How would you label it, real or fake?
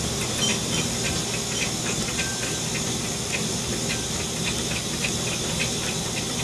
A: real